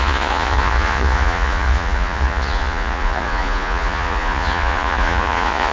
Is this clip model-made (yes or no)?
yes